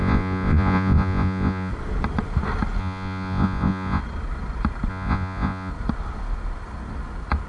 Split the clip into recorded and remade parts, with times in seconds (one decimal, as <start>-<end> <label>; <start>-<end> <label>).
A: 0.0-1.7 remade; 1.7-2.8 recorded; 2.8-4.0 remade; 4.0-4.9 recorded; 4.9-5.7 remade; 5.7-7.5 recorded